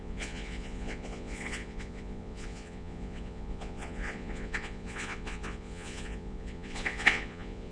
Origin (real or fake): fake